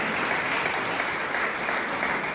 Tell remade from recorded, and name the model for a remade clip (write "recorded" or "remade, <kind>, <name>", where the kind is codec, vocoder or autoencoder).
recorded